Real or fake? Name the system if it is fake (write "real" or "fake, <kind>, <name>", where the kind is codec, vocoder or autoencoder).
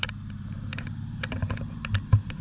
fake, vocoder, BigVGAN v2